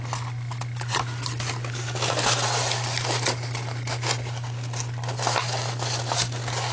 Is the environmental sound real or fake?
real